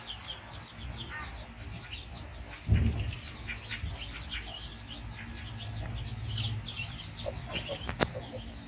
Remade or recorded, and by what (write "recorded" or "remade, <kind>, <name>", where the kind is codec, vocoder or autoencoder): recorded